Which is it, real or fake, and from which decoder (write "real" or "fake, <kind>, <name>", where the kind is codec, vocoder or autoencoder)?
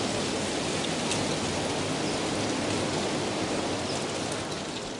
real